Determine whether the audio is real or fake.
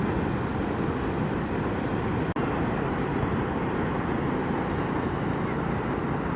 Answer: real